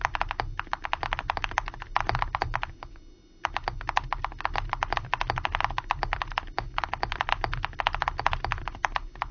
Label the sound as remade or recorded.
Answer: recorded